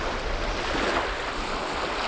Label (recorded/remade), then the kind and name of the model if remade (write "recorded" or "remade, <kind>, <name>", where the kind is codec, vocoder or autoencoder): recorded